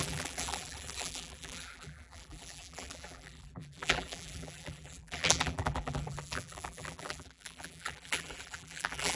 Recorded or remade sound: remade